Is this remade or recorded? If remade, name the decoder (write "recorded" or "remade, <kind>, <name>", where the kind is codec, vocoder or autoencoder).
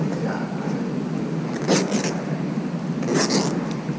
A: recorded